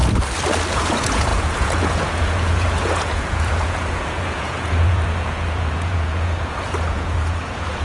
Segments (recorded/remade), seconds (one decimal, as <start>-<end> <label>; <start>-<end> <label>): 0.0-0.7 recorded; 0.7-7.8 remade